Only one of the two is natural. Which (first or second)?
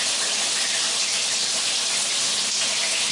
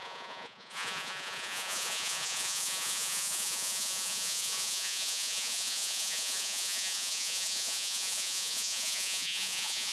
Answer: first